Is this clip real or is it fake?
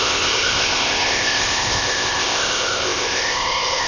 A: fake